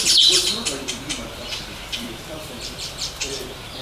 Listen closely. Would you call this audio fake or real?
fake